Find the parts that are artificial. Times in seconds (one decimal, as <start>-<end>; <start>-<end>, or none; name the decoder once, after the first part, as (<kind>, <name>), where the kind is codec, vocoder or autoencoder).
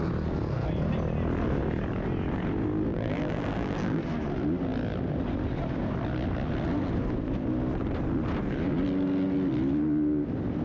2.9-4.0 (vocoder, BigVGAN v2)